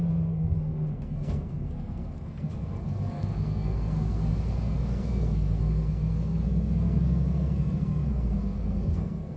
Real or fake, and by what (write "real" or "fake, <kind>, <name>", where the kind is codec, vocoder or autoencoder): fake, codec, SNAC